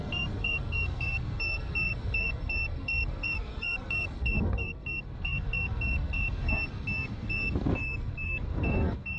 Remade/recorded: remade